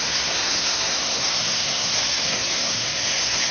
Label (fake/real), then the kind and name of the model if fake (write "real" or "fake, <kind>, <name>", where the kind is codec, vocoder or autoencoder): fake, codec, SNAC